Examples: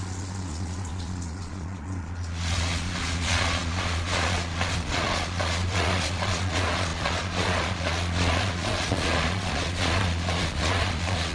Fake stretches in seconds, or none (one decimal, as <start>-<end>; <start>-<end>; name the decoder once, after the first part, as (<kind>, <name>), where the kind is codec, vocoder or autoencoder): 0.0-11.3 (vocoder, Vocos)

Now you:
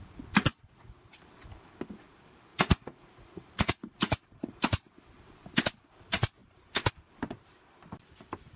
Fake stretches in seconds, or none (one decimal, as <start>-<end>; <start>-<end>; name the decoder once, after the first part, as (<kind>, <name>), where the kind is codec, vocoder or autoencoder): 0.5-1.2 (vocoder, Vocos); 2.5-4.6

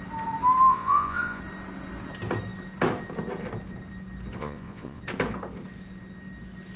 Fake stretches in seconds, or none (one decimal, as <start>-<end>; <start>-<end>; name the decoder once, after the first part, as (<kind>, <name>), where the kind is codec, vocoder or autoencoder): 0.7-1.4 (vocoder, Vocos); 4.4-5.0